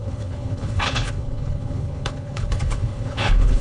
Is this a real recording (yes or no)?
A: no